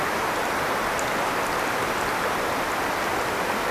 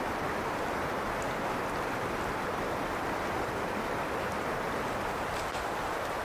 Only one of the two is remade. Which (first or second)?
second